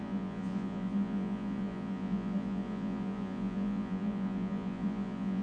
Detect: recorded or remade remade